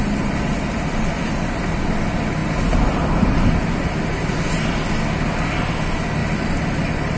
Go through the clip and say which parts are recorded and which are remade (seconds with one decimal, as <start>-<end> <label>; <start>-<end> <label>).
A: 0.0-1.8 remade; 1.8-6.2 recorded; 6.2-7.2 remade